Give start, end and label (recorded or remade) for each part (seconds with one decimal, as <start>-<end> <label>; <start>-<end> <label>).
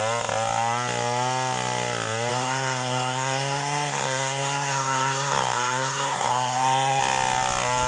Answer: 0.0-2.3 recorded; 2.3-7.0 remade; 7.0-7.9 recorded